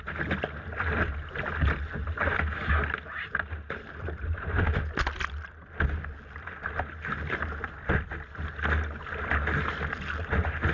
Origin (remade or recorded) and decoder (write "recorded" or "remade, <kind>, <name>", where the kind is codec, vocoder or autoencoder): recorded